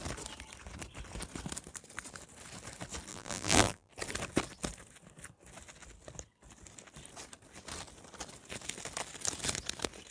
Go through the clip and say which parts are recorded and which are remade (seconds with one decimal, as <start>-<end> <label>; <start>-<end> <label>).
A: 0.0-3.1 recorded; 3.1-3.9 remade; 3.9-10.1 recorded